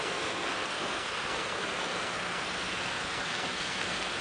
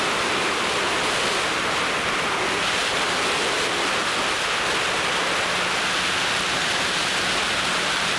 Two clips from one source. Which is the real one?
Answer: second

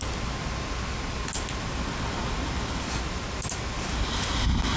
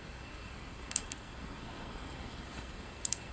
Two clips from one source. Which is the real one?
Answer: first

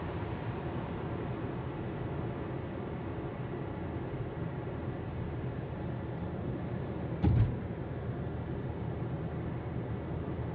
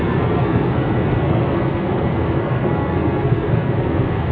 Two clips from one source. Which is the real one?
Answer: first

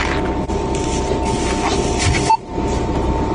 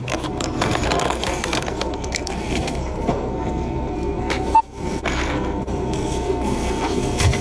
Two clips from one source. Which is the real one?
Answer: first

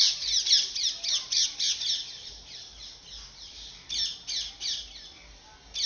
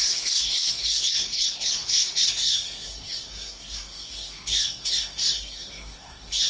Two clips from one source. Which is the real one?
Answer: first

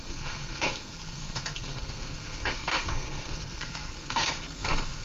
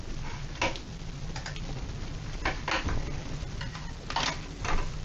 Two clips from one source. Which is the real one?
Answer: second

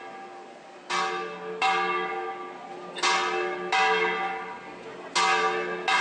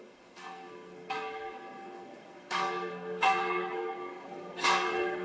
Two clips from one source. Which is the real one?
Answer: first